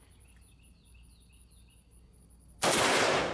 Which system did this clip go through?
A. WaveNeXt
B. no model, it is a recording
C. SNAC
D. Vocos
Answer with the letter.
B